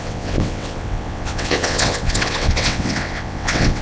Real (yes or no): no